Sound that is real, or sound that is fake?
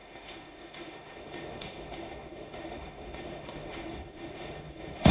fake